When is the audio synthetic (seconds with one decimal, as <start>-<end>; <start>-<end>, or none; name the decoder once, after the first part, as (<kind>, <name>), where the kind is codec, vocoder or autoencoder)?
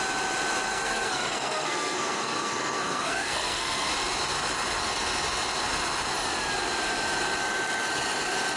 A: 0.7-3.9 (codec, SNAC)